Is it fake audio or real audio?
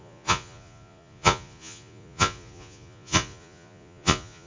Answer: fake